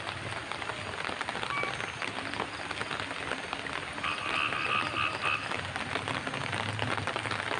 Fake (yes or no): no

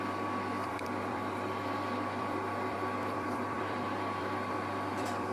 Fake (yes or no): yes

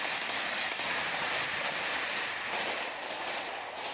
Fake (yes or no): yes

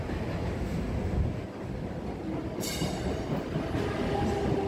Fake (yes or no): no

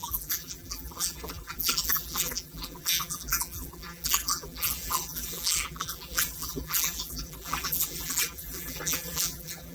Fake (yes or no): yes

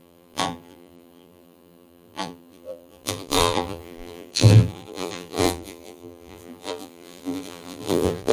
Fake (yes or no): yes